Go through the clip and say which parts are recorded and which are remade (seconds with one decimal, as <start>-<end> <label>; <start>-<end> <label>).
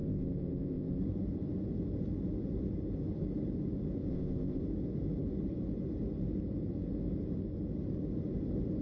0.0-1.0 remade; 1.0-4.1 recorded; 4.1-4.6 remade; 4.6-8.8 recorded